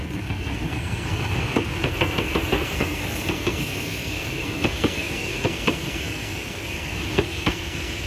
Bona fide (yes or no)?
no